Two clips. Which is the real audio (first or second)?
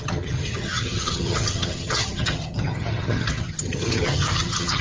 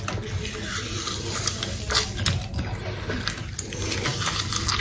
second